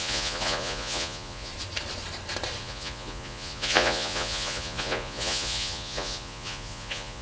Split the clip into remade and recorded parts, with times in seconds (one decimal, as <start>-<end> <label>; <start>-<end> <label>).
0.0-1.5 remade; 1.5-2.6 recorded; 2.6-7.2 remade